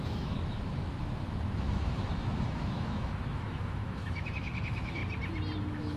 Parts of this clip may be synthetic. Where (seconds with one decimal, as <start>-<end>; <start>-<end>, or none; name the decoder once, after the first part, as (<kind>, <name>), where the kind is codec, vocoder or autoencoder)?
0.0-5.0 (autoencoder, DAC-VAE); 5.6-6.0